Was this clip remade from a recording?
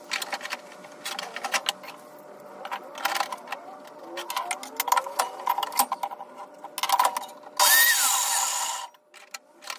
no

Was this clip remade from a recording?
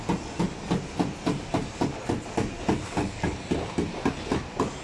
no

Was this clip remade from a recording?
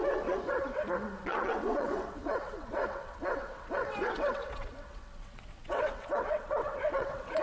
yes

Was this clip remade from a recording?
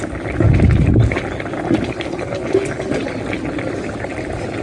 no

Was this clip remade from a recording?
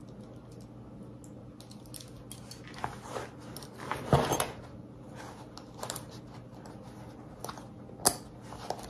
no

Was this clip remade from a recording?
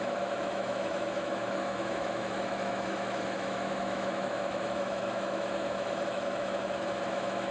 yes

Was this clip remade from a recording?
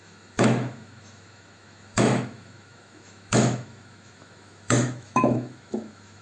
yes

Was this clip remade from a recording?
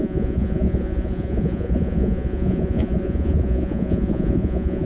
yes